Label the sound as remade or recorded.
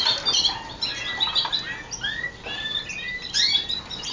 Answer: recorded